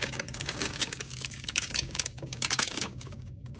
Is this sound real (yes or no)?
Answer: no